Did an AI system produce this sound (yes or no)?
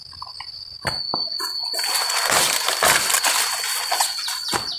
no